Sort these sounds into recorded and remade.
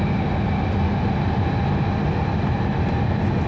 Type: recorded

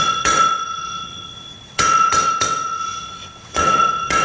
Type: remade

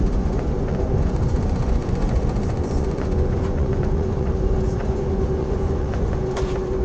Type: remade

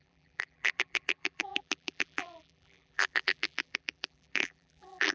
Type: remade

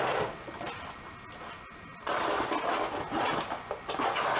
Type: recorded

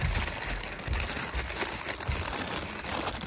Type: recorded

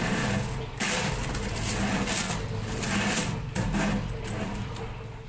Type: recorded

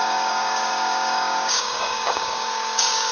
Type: remade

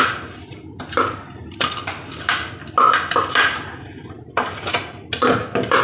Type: recorded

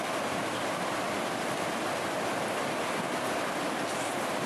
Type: recorded